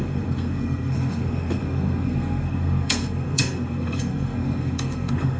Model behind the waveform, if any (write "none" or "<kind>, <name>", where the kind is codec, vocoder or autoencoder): codec, SNAC